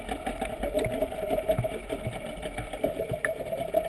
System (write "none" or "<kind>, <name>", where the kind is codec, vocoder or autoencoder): none